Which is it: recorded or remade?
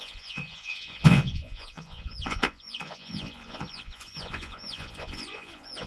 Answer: remade